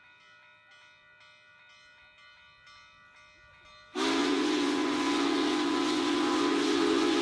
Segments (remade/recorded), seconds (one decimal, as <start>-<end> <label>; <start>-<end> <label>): 0.0-4.2 recorded; 4.2-7.2 remade